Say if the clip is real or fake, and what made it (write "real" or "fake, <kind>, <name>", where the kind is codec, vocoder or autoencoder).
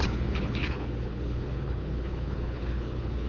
fake, codec, HILCodec